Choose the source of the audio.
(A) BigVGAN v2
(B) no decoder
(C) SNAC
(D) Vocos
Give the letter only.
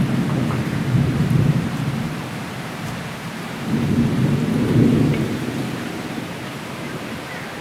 A